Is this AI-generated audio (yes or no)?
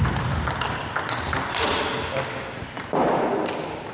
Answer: no